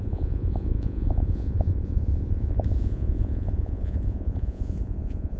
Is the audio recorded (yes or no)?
no